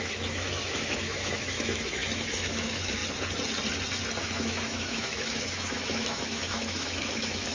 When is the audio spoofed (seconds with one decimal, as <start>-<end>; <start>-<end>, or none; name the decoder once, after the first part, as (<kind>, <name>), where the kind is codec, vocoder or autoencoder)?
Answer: 0.0-3.0 (autoencoder, DAC-VAE); 4.2-7.5